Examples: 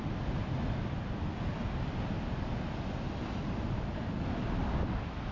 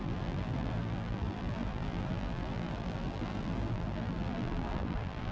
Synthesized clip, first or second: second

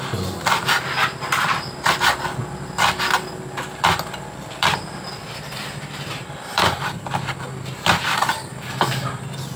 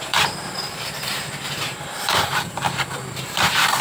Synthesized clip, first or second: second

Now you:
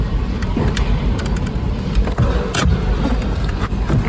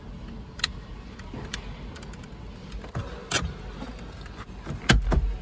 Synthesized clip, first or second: first